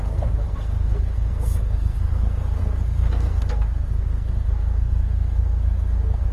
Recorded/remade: remade